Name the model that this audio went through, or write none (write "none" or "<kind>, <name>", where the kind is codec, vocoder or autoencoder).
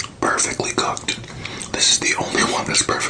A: none